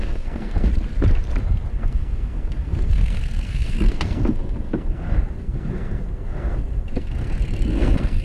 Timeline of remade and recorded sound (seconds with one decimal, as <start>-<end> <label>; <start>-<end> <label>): 0.0-0.7 remade; 0.7-1.7 recorded; 1.7-8.2 remade